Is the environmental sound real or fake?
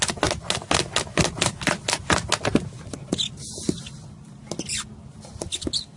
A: real